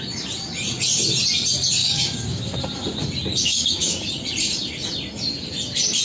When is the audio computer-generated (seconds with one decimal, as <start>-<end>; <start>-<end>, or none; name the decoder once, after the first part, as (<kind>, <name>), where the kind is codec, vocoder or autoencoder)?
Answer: 1.8-2.4 (codec, DAC); 3.3-4.0

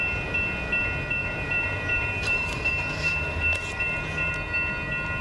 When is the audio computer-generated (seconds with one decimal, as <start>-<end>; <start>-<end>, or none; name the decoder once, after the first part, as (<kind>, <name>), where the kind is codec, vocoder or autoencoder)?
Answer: 1.2-4.3 (vocoder, BigVGAN v2)

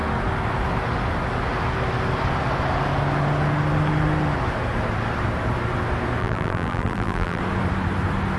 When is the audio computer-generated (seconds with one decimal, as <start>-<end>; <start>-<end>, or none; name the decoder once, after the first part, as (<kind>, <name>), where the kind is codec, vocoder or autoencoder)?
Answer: 6.2-7.4 (vocoder, BigVGAN v2)

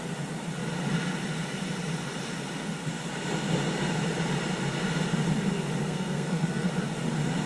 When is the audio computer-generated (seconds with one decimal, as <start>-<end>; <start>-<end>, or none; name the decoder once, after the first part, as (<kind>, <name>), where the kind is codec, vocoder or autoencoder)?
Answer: 5.8-6.7 (codec, SNAC)

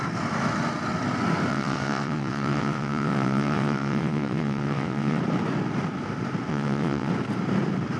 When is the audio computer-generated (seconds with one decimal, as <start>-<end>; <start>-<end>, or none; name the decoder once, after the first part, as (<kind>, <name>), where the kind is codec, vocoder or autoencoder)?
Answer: 1.5-5.2 (vocoder, WaveNeXt); 6.5-7.1

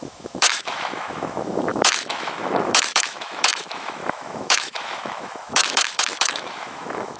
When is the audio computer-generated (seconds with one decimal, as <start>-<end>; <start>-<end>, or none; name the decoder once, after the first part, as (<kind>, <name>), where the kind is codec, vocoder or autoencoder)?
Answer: 0.0-7.2 (autoencoder, DAC-VAE)

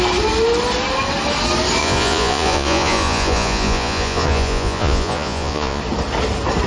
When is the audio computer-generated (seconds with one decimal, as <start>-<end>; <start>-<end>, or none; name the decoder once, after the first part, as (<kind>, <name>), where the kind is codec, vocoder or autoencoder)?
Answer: 1.8-5.8 (vocoder, Vocos)

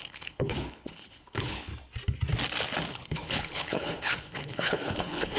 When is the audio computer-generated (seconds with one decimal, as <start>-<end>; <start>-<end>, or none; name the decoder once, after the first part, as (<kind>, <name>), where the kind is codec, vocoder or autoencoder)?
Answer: 0.0-1.7 (codec, HILCodec); 2.9-5.4